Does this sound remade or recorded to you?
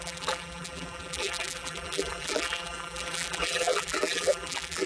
remade